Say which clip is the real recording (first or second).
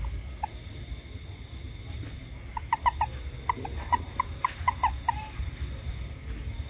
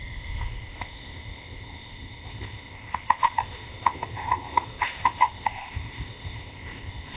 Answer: first